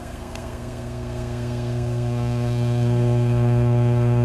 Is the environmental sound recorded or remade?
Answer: remade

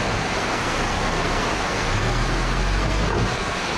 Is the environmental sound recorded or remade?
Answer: remade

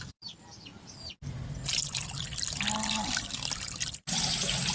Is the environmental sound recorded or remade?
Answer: recorded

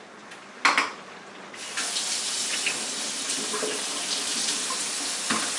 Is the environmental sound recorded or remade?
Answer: recorded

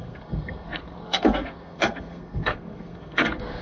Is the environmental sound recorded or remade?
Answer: remade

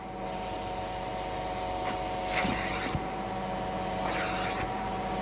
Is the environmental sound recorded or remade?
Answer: recorded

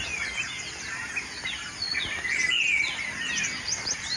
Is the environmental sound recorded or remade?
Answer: recorded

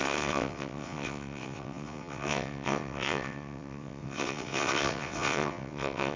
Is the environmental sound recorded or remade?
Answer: remade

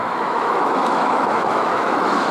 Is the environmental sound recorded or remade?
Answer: remade